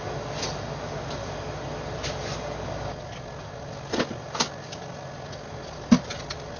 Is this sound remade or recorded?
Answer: recorded